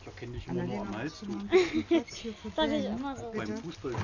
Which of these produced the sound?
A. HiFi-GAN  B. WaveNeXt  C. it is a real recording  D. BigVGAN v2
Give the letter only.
C